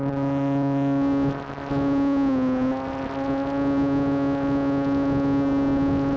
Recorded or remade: recorded